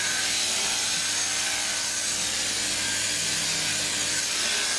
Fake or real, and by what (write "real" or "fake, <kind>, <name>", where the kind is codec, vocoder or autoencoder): real